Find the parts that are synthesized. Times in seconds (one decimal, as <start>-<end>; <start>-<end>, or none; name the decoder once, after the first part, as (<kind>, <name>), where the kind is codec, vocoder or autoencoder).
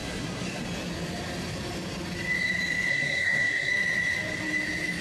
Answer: 0.0-0.6 (codec, SNAC); 2.9-3.7